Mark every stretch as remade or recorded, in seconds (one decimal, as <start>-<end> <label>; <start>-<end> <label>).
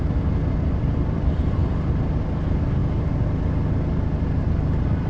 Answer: 0.0-2.8 remade; 2.8-4.4 recorded; 4.4-5.1 remade